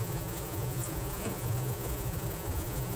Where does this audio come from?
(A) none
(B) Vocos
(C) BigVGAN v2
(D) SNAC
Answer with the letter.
B